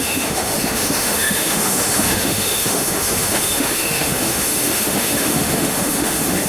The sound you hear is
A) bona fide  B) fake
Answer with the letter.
B